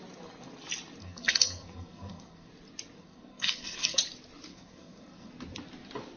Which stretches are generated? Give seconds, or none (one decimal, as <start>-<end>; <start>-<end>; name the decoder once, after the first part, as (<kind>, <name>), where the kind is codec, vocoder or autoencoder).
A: 1.0-2.5 (codec, SNAC); 3.0-4.0; 4.5-5.3